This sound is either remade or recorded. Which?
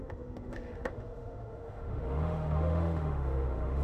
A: remade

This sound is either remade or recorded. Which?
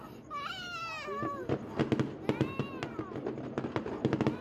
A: recorded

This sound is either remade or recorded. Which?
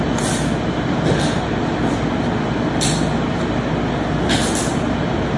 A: recorded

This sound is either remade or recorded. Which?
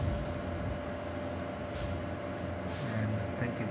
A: recorded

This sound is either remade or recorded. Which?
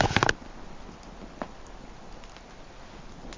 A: recorded